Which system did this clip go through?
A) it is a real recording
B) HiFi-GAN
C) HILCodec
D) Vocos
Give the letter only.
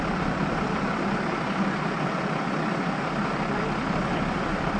A